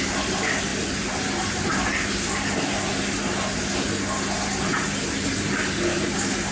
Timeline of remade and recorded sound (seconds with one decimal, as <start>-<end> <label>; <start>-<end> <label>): 0.0-6.5 recorded